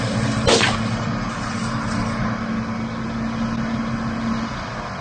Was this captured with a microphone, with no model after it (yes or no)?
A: yes